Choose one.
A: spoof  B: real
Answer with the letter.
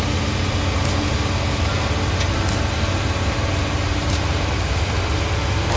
B